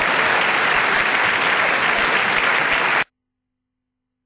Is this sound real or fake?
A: real